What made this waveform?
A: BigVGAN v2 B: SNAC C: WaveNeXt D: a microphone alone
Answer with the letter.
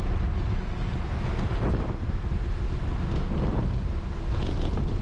D